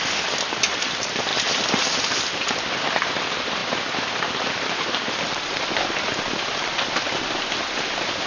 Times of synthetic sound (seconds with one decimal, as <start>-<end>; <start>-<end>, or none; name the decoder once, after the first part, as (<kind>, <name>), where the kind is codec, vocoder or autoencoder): 1.3-2.7 (vocoder, BigVGAN v2); 3.6-7.8